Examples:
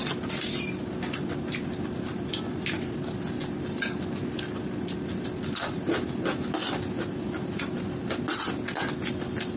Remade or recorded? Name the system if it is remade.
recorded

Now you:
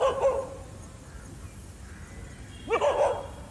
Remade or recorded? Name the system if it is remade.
recorded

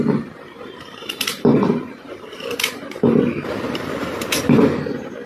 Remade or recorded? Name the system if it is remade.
remade, vocoder, BigVGAN v2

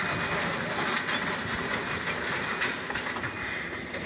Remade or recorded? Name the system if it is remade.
recorded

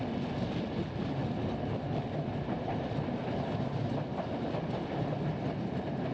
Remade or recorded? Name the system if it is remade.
recorded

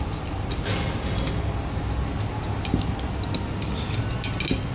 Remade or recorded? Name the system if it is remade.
recorded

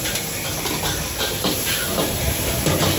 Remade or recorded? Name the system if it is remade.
recorded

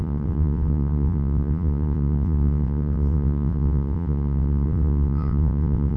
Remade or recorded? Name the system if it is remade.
remade, vocoder, WaveNeXt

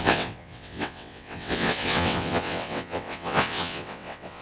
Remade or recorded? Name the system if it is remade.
remade, vocoder, WaveNeXt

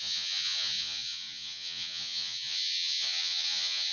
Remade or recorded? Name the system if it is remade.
remade, vocoder, Vocos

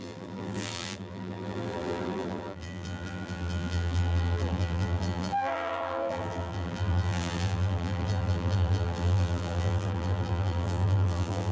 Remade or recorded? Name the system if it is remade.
remade, vocoder, BigVGAN v2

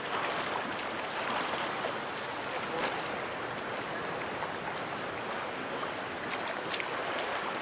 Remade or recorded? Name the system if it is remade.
recorded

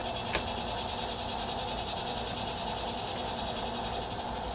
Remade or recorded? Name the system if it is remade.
recorded